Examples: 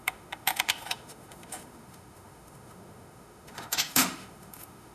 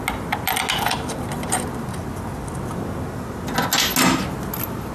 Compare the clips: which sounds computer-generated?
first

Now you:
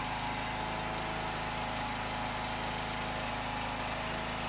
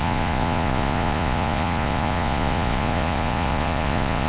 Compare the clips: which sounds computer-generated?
second